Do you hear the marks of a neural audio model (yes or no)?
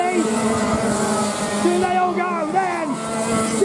no